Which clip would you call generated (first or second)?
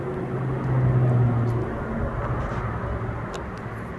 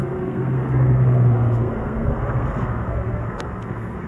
second